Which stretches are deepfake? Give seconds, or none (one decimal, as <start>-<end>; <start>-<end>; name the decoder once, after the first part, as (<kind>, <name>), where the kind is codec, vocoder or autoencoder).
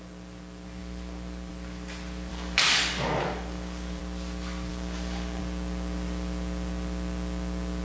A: 2.3-4.0 (codec, DAC); 4.7-5.4